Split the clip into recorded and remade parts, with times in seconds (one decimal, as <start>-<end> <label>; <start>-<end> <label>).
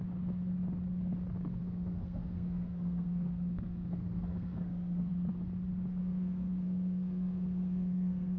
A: 0.0-1.6 recorded; 1.6-5.1 remade; 5.1-6.0 recorded; 6.0-8.4 remade